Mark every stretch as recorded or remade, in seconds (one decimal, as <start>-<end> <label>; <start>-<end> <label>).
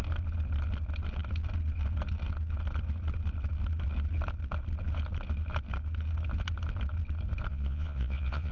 0.0-7.5 recorded; 7.5-8.5 remade